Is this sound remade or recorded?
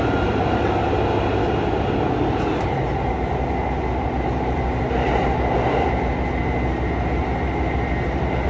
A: recorded